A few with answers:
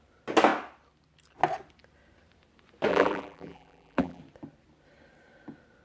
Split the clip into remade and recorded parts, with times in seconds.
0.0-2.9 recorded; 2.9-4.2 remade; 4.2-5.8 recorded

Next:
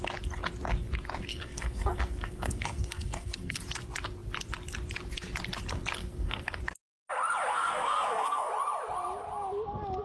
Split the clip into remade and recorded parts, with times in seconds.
0.0-1.3 recorded; 1.3-3.6 remade; 3.6-6.0 recorded; 6.0-6.6 remade; 6.6-7.5 recorded; 7.5-8.5 remade; 8.5-10.0 recorded

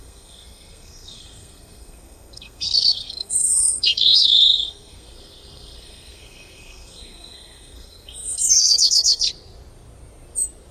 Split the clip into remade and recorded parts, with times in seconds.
0.0-9.3 remade; 9.3-10.7 recorded

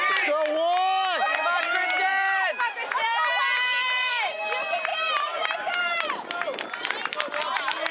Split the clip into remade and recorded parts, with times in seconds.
0.0-2.1 recorded; 2.1-4.4 remade; 4.4-4.9 recorded; 4.9-5.8 remade; 5.8-7.9 recorded

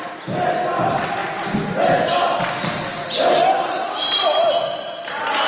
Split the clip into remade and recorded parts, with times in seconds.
0.0-5.5 recorded

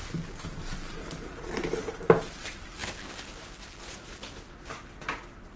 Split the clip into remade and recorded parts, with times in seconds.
0.0-2.4 remade; 2.4-5.6 recorded